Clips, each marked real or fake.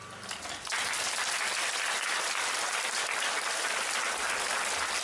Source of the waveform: real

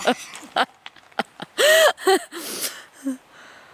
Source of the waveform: real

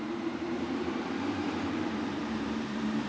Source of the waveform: fake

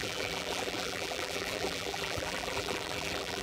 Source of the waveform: fake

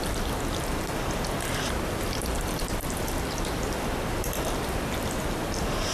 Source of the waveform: fake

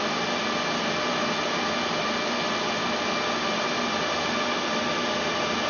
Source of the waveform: real